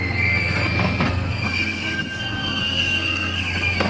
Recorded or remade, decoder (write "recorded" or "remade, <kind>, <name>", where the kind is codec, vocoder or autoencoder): remade, codec, SNAC